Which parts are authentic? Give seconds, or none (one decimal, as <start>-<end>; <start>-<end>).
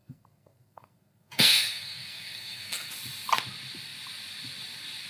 2.9-5.1